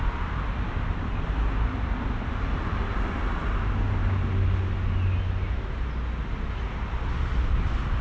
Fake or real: real